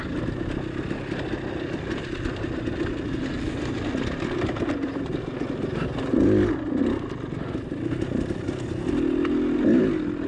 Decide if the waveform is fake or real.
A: real